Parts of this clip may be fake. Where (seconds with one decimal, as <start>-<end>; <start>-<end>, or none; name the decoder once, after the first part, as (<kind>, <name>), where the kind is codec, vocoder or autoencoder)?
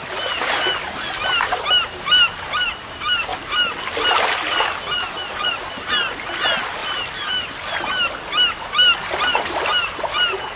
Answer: none